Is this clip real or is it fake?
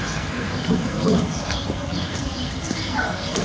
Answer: fake